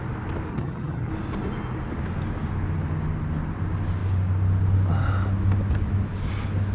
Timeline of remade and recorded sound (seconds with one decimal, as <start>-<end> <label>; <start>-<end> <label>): 0.0-0.5 recorded; 0.5-1.1 remade; 1.1-6.7 recorded